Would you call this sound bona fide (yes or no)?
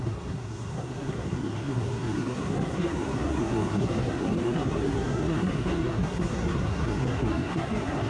no